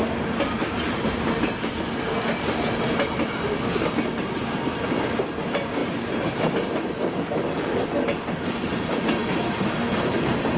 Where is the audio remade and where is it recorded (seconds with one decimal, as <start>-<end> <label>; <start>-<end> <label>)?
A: 0.0-0.6 recorded; 0.6-1.7 remade; 1.7-5.8 recorded; 5.8-6.9 remade; 6.9-10.6 recorded